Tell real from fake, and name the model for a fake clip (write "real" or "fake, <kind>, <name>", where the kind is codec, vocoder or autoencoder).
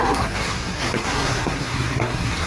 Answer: fake, codec, SNAC